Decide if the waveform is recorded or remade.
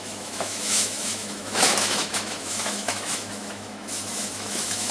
remade